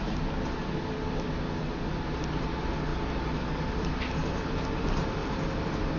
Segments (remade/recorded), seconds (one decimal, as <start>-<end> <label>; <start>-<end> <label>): 0.0-6.0 recorded